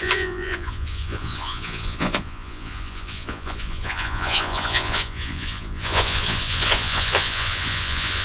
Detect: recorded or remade remade